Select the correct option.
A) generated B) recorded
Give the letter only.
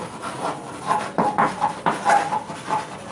B